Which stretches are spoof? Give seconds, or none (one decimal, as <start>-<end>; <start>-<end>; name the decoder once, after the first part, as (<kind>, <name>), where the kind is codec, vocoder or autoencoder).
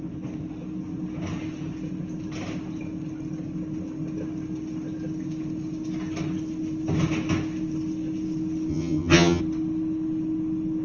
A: 8.7-9.4 (vocoder, HiFi-GAN)